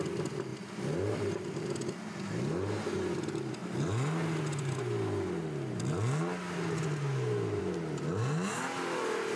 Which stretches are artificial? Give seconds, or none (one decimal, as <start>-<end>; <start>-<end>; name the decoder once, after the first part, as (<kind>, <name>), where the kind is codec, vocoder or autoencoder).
none